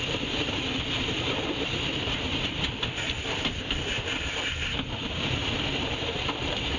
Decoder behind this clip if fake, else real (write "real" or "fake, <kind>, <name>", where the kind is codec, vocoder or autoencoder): fake, vocoder, BigVGAN v2